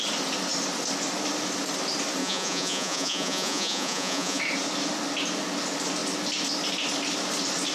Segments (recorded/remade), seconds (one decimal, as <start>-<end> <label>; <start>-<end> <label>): 0.0-2.2 recorded; 2.2-4.4 remade; 4.4-7.7 recorded